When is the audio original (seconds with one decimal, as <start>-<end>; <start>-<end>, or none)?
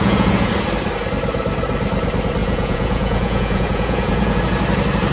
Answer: 0.5-2.4; 4.4-5.1